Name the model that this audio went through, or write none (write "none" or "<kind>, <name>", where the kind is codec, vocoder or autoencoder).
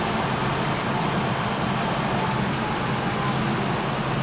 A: none